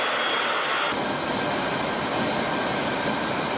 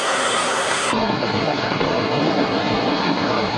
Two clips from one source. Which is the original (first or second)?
first